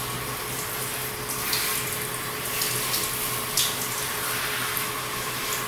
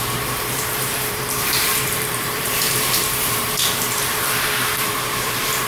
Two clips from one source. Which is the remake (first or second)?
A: second